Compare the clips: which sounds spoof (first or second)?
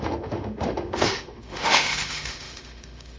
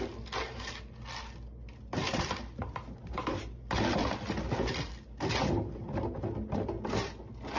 first